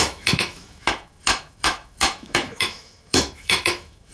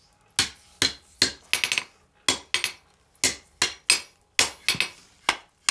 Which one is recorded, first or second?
second